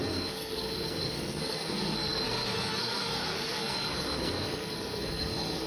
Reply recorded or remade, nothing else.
remade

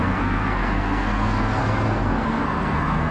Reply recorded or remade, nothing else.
remade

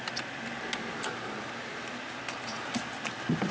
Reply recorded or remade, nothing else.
recorded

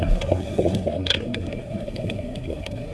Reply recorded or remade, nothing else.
remade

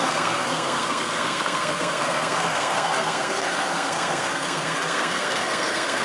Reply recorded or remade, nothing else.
remade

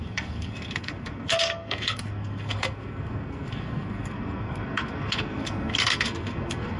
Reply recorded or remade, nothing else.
remade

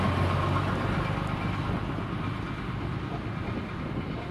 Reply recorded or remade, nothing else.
recorded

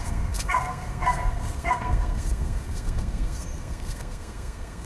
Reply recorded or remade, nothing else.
remade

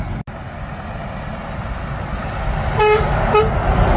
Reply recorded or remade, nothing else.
recorded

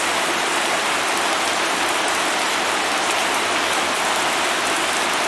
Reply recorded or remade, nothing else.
recorded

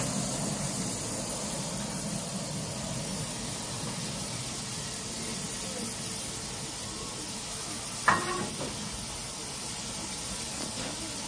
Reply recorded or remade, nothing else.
recorded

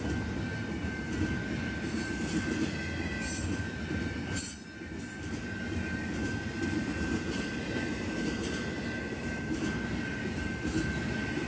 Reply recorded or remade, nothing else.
recorded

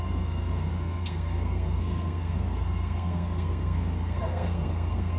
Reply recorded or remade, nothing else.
remade